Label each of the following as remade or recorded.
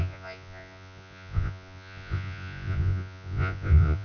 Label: remade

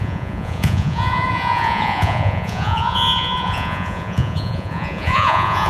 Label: remade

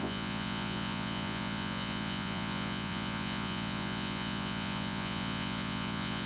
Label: remade